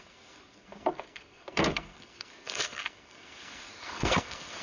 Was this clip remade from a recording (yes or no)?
yes